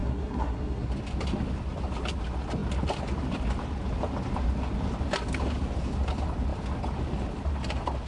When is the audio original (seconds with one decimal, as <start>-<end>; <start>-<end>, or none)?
0.9-8.1